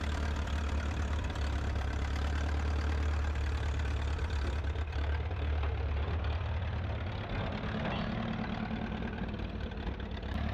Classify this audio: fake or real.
real